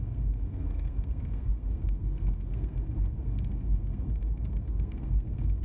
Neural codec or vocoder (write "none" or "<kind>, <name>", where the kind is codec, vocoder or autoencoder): codec, SNAC